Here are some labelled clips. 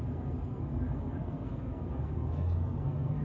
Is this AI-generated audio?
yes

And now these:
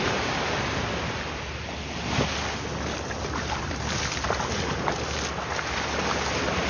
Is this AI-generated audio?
no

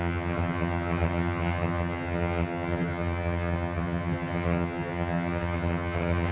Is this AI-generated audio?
yes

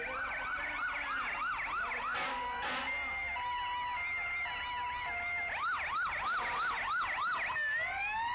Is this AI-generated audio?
no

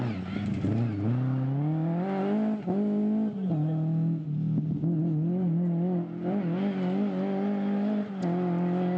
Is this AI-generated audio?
no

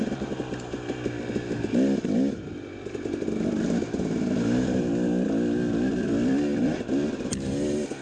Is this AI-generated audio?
no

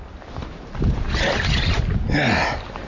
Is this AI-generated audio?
no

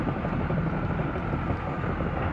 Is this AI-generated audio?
no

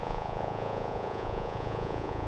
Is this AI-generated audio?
yes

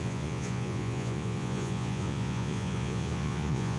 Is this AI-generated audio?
yes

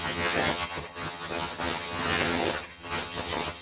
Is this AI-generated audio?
yes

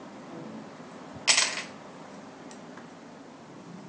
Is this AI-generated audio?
no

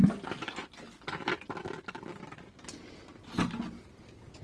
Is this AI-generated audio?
no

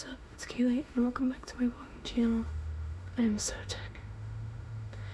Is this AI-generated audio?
yes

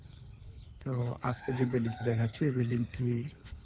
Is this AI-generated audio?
yes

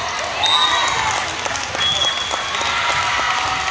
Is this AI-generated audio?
no